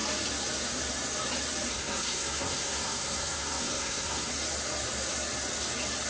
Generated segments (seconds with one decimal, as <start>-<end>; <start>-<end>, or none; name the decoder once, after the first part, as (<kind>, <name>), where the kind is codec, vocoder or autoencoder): 1.7-4.3 (codec, SNAC)